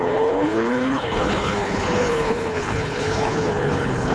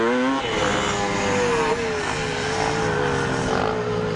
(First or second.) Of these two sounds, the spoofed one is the first